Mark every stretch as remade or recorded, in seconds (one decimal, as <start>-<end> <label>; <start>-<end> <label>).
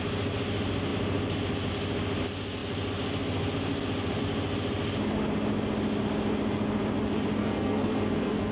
0.0-7.4 recorded; 7.4-8.5 remade